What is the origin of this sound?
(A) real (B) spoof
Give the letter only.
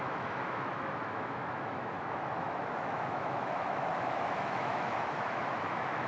B